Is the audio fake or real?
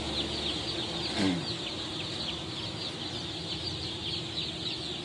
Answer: real